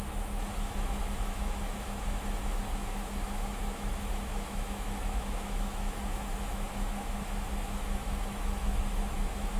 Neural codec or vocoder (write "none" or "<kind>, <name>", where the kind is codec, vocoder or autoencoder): autoencoder, DAC-VAE